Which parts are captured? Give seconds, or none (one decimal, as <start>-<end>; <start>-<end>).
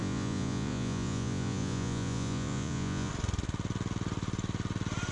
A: 3.1-5.1